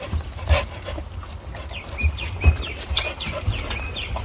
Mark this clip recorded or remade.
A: recorded